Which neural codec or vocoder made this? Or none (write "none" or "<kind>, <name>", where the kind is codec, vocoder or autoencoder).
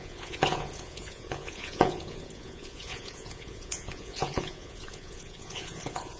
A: vocoder, Vocos